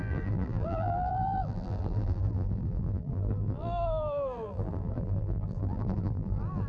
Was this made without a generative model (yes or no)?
no